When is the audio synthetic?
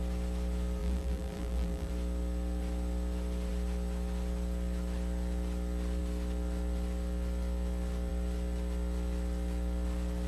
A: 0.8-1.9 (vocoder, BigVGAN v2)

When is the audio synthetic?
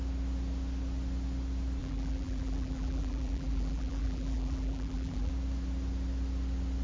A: 1.8-5.3 (vocoder, BigVGAN v2)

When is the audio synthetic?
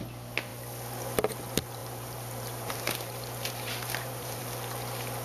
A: 1.8-4.4 (vocoder, BigVGAN v2)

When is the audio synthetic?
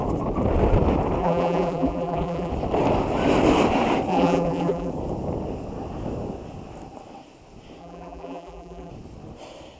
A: 1.2-2.5 (vocoder, BigVGAN v2); 4.1-4.9; 7.8-8.9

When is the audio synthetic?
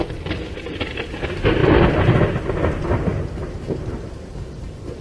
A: 3.1-5.0 (vocoder, BigVGAN v2)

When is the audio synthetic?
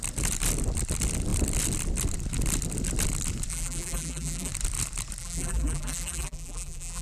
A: 3.5-4.5 (vocoder, BigVGAN v2); 5.2-7.0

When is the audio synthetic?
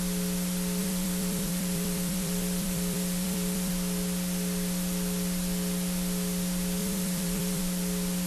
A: 0.8-3.7 (vocoder, BigVGAN v2); 6.8-7.6